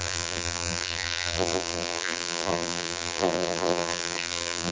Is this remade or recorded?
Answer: remade